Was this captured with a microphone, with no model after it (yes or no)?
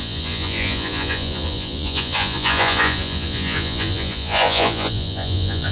no